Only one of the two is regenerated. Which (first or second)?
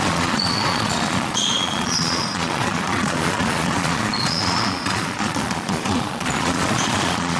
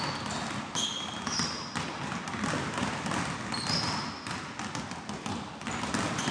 first